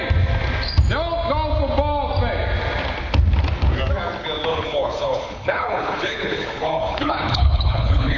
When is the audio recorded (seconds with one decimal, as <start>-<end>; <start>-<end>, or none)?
0.0-4.5